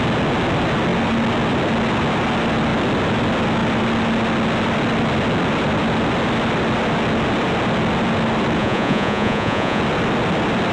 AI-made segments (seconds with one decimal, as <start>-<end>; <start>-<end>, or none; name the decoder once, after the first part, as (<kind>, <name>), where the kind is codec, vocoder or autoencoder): 8.6-9.8 (vocoder, Vocos)